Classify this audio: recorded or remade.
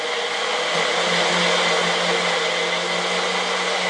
recorded